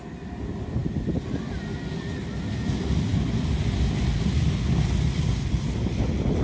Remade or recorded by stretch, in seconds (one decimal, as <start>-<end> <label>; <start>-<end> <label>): 0.0-6.4 recorded